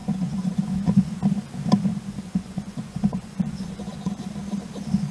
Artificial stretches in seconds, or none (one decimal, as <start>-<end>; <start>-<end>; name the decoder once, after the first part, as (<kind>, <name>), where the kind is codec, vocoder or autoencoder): 0.0-1.2 (vocoder, Vocos); 1.9-4.2